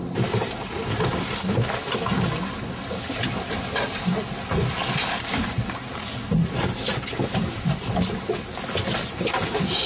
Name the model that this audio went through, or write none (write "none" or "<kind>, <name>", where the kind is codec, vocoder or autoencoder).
none